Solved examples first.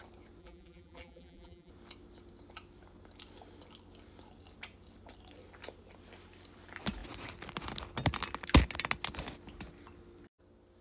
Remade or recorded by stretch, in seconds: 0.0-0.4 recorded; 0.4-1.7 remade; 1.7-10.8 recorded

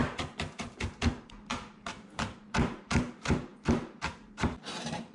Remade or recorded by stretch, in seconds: 0.0-3.5 remade; 3.5-4.1 recorded; 4.1-5.1 remade

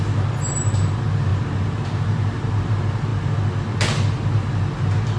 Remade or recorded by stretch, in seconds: 0.0-5.2 recorded

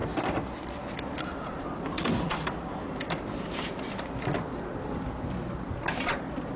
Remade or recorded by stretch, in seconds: 0.0-4.0 remade; 4.0-6.6 recorded

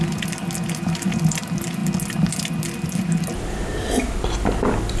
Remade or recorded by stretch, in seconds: 0.0-5.0 recorded

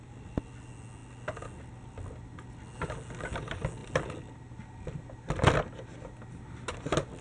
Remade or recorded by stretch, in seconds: 0.0-7.2 recorded

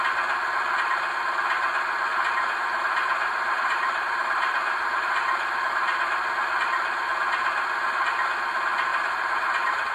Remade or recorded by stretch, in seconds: 0.0-2.1 recorded; 2.1-6.1 remade; 6.1-8.9 recorded; 8.9-9.9 remade